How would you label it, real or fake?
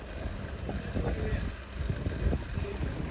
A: real